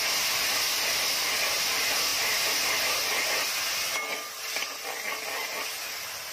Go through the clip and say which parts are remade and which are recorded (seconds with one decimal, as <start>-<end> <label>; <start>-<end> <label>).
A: 0.0-6.3 recorded